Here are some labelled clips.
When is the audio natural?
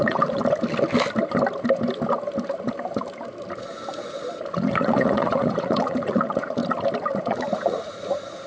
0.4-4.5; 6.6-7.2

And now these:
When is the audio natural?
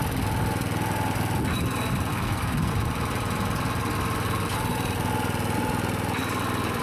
0.0-2.1; 2.7-6.8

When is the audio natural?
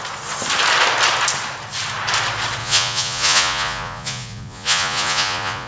0.0-2.6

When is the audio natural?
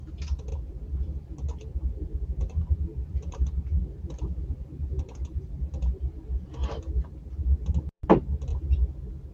0.0-0.5; 5.5-6.6; 8.0-9.3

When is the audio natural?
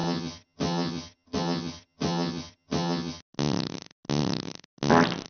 3.2-5.3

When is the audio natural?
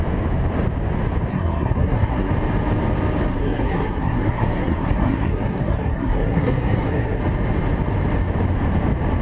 0.0-1.3; 2.3-3.3; 7.2-9.2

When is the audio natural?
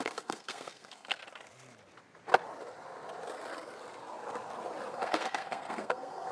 1.2-4.9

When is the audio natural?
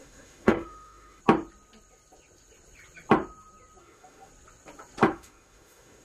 1.2-3.8; 4.3-5.1